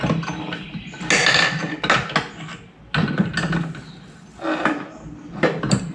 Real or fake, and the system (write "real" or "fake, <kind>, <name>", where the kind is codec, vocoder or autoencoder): real